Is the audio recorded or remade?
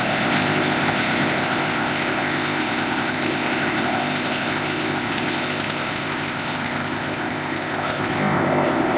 remade